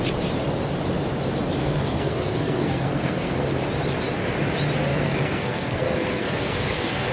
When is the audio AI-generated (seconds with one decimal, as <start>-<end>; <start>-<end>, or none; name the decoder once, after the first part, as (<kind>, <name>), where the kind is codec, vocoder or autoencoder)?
1.6-3.6 (codec, SNAC); 4.9-7.1